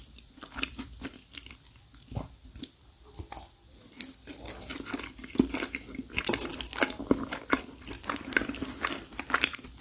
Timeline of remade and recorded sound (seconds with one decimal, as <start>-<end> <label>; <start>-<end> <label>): 0.0-1.9 remade; 1.9-2.6 recorded; 2.6-4.7 remade; 4.7-6.1 recorded; 6.1-6.5 remade; 6.5-7.3 recorded; 7.3-9.8 remade